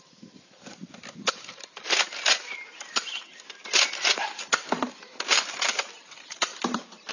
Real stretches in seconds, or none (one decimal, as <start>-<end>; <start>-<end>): 0.8-4.8; 6.5-7.1